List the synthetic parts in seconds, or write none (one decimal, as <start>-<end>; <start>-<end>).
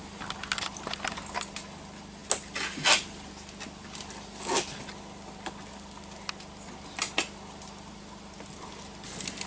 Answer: none